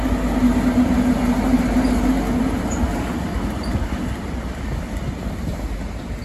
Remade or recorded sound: recorded